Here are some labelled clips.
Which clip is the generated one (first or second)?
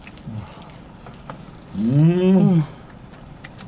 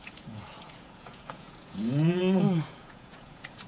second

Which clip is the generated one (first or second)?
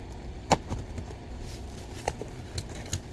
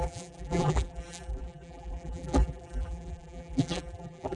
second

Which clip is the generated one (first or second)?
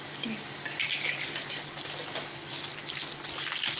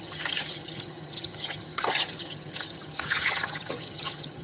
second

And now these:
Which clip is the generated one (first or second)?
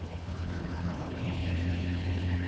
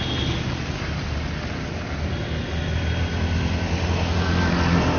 first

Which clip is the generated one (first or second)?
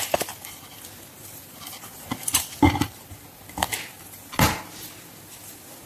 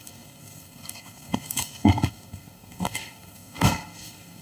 second